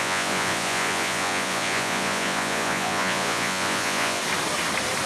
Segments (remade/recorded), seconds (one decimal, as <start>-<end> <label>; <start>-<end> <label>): 0.0-4.2 remade; 4.2-5.1 recorded